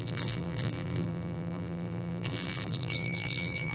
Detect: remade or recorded remade